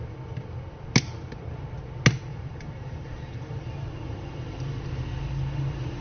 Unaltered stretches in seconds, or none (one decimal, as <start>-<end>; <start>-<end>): 0.0-2.3